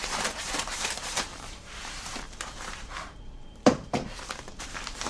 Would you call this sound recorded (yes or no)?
no